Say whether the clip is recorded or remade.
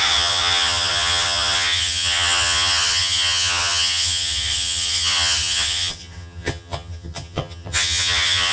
remade